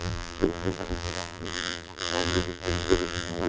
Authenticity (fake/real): fake